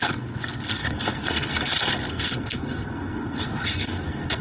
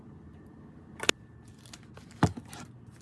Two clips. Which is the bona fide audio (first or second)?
second